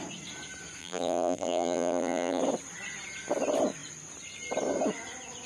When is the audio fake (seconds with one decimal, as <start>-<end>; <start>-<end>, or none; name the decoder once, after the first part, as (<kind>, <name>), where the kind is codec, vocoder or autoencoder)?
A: 0.8-2.4 (vocoder, BigVGAN v2)